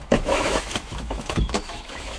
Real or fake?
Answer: fake